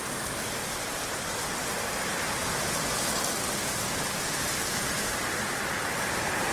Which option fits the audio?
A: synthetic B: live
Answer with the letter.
B